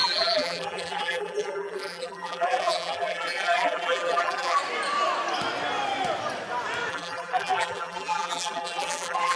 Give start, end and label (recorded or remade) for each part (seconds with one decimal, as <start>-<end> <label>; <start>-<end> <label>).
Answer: 0.0-4.6 remade; 4.6-6.9 recorded; 6.9-9.4 remade